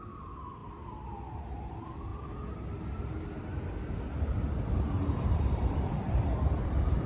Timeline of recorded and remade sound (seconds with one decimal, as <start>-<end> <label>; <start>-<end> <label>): 0.0-0.6 remade; 0.6-1.4 recorded; 1.4-2.1 remade; 2.1-5.2 recorded; 5.2-7.1 remade